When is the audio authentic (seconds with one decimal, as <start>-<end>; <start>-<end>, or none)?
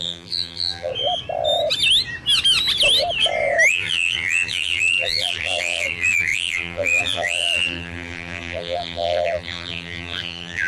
0.9-3.7